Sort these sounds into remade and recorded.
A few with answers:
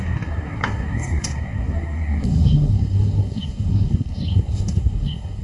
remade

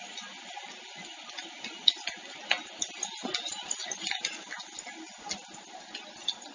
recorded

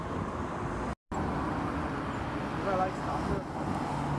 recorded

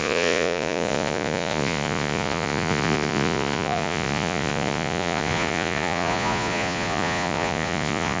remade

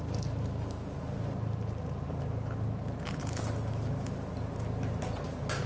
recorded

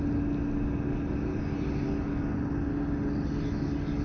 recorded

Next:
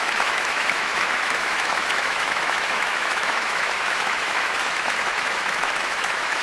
remade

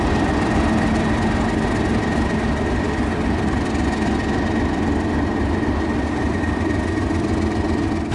recorded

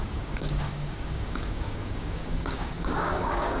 remade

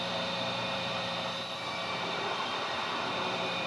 remade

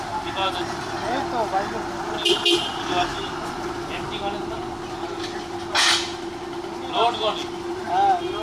recorded